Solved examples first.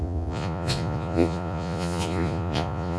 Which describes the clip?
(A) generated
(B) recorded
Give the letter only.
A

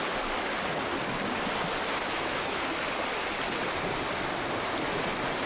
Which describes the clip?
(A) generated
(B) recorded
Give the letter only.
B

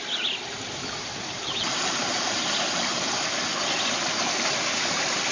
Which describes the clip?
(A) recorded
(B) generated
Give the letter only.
A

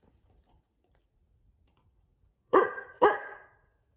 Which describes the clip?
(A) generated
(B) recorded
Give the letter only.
A